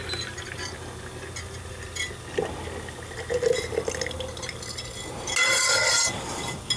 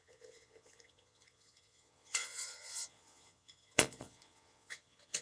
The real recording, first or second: first